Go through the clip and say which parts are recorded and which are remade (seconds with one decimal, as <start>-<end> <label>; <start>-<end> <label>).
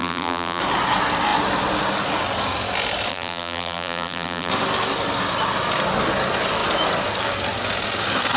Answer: 0.0-0.6 remade; 0.6-3.1 recorded; 3.1-4.5 remade; 4.5-8.4 recorded